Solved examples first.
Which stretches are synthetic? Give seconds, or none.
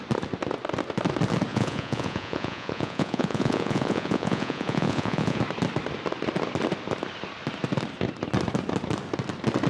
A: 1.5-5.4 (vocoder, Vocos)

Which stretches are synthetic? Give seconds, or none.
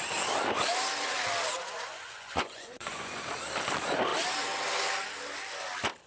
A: 1.6-3.2 (vocoder, Vocos)